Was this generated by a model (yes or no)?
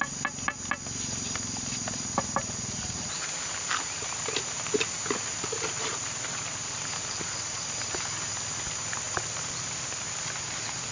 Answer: no